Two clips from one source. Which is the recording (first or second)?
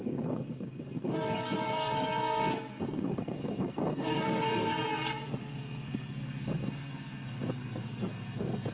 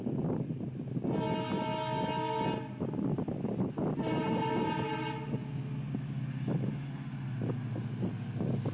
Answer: second